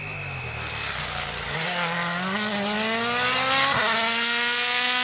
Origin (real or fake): real